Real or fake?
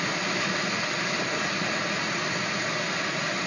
real